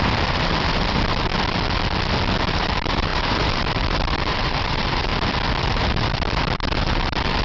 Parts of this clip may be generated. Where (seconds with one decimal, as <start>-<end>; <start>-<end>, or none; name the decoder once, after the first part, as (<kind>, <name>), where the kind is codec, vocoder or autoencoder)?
0.0-1.3 (vocoder, BigVGAN v2); 2.5-5.1; 5.6-7.4